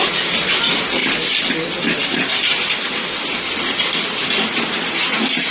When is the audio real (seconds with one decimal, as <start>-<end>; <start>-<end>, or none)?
0.0-1.0; 4.3-5.5